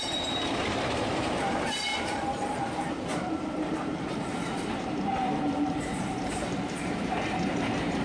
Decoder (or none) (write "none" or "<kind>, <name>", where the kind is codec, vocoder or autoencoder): vocoder, BigVGAN v2